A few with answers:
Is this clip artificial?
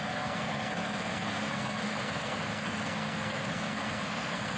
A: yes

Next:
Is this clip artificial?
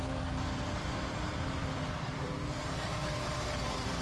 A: yes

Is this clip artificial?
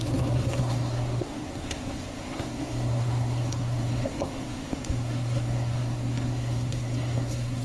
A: yes